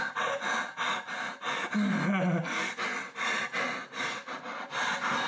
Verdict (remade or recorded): recorded